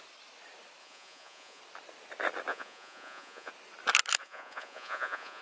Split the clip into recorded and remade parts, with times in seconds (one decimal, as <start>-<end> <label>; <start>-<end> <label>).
0.0-0.8 recorded; 0.8-1.6 remade; 1.6-2.5 recorded; 2.5-3.5 remade; 3.5-4.2 recorded; 4.2-5.4 remade